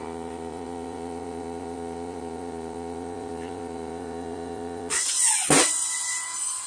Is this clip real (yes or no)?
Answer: no